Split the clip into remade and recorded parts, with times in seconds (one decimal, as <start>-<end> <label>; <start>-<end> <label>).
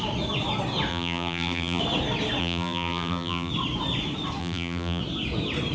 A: 0.0-0.9 recorded; 0.9-1.8 remade; 1.8-2.4 recorded; 2.4-3.5 remade; 3.5-4.4 recorded; 4.4-5.0 remade; 5.0-5.7 recorded